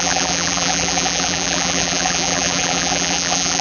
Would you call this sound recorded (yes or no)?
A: no